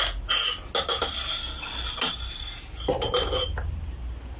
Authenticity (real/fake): real